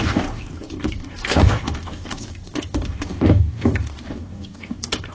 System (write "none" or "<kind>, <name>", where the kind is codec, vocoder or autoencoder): codec, DAC